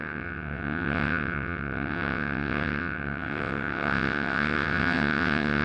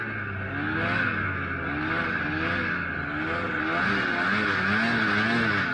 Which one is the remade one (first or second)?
first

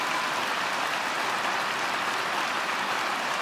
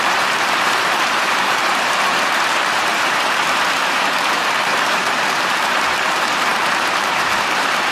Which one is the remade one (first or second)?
second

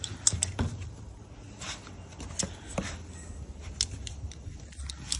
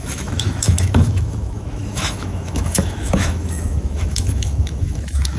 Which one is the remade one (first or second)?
second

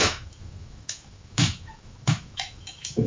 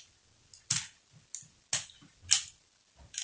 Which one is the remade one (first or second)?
first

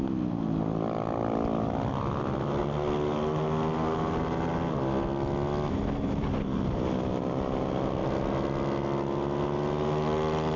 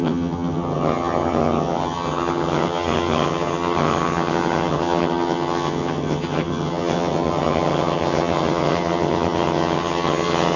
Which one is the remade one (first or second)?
second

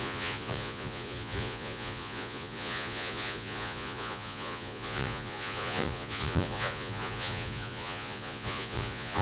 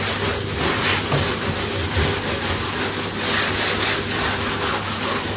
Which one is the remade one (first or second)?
first